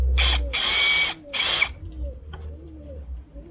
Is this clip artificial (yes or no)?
no